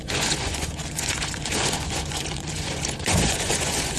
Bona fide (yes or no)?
no